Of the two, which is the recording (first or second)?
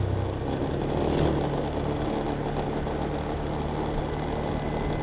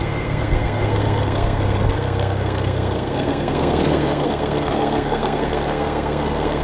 first